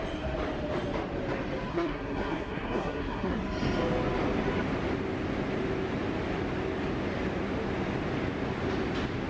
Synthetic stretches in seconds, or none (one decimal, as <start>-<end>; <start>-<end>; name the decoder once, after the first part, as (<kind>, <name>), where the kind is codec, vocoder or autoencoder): 1.7-3.4 (codec, SNAC)